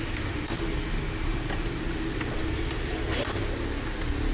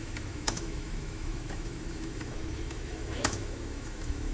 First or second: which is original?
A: first